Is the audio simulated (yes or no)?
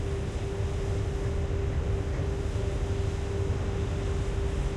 no